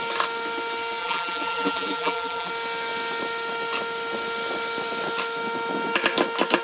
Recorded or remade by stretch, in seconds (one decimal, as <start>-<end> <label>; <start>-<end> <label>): 0.0-1.0 recorded; 1.0-2.5 remade; 2.5-6.6 recorded